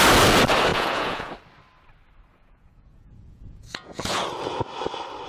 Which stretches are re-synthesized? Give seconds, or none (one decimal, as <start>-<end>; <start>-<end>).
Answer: 0.7-1.3; 2.3-4.2